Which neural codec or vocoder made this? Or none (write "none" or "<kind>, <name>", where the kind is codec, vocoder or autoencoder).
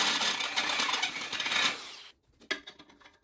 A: none